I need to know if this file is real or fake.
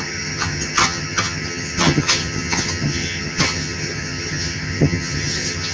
fake